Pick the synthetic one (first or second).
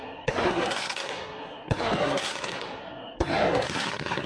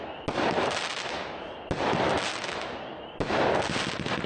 first